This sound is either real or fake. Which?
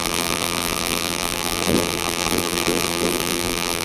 fake